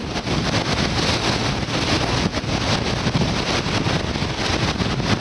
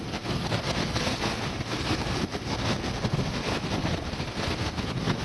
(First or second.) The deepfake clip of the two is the second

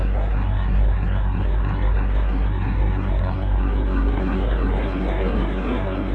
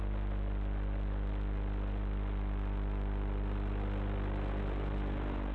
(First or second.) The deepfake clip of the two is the first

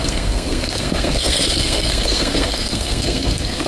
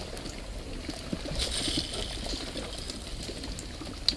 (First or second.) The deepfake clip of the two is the first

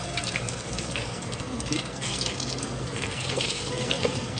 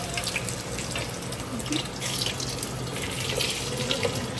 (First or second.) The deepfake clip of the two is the first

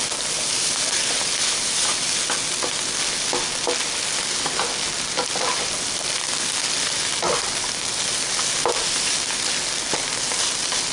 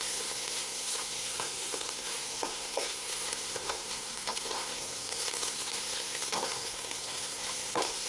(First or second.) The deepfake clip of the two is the second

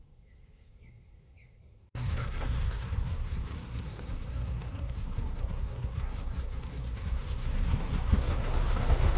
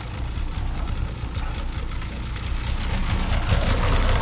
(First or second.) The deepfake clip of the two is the first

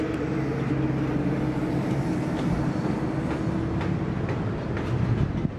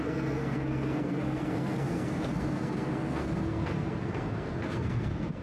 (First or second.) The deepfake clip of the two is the second